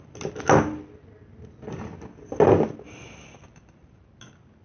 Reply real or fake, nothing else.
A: real